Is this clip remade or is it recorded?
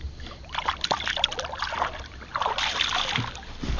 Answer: recorded